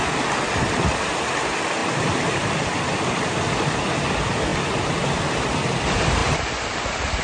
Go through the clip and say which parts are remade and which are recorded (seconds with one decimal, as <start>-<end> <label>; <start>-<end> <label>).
0.0-7.2 recorded